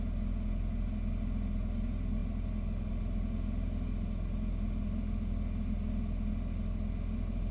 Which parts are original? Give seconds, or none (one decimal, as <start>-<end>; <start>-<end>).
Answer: 0.0-7.5